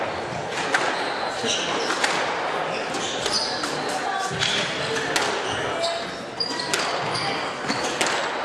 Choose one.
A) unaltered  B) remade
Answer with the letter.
A